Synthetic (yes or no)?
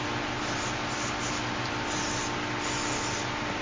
no